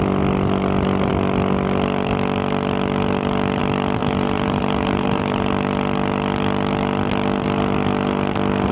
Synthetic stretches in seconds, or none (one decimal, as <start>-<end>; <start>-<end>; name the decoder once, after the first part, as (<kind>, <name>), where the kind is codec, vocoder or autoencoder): 4.0-5.5 (vocoder, BigVGAN v2)